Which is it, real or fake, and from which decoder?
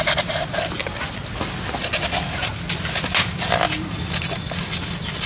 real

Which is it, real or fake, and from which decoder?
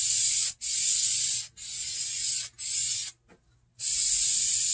real